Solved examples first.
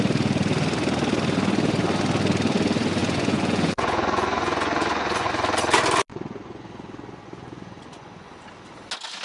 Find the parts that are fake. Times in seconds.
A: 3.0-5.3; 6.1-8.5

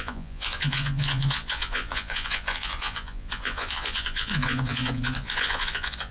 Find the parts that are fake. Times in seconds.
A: 0.0-6.1

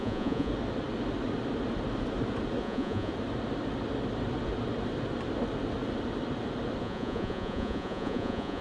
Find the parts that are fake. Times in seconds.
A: 0.0-0.5; 2.6-3.1; 6.8-8.6

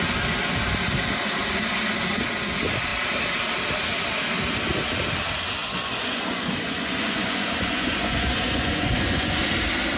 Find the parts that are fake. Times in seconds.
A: 5.6-9.4